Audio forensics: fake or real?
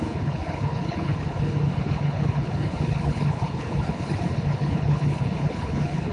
fake